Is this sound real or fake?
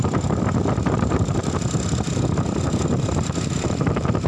fake